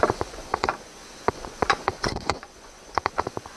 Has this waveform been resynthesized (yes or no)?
yes